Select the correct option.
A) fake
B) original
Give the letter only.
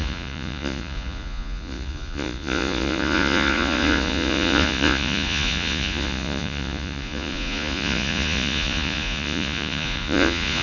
A